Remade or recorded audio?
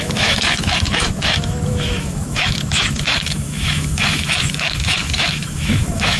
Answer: remade